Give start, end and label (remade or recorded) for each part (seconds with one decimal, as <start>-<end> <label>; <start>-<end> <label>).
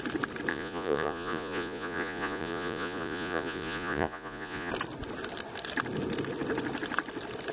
0.0-0.5 recorded; 0.5-4.7 remade; 4.7-7.5 recorded